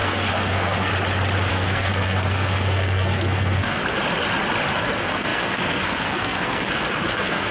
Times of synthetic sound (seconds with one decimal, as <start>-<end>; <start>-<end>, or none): 0.0-0.9; 1.5-3.8; 4.7-7.5